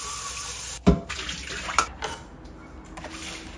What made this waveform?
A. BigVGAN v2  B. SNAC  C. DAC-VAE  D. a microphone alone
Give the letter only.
D